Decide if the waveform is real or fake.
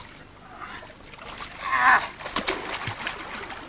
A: real